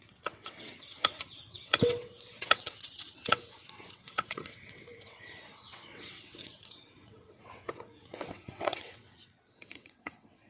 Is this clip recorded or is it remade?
remade